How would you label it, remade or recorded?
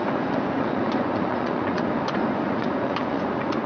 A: remade